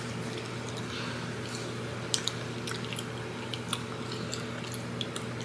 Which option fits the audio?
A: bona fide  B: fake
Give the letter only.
A